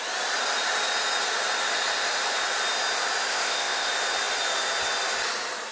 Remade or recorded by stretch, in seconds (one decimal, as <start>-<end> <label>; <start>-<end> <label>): 0.0-3.3 recorded; 3.3-3.9 remade; 3.9-5.7 recorded